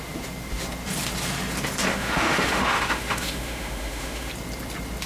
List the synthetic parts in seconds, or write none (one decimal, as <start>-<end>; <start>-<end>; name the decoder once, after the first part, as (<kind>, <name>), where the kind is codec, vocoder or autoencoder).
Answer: 1.9-4.3 (autoencoder, DAC-VAE)